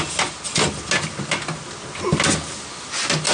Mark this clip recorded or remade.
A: recorded